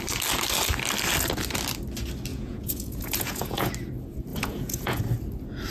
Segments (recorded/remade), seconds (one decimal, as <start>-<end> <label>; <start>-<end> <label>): 0.0-2.3 recorded; 2.3-3.7 remade; 3.7-4.3 recorded; 4.3-5.0 remade; 5.0-5.7 recorded